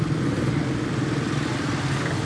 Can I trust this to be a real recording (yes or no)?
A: yes